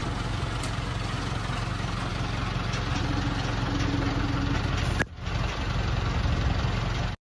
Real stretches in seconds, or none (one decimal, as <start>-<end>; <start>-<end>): 0.0-7.2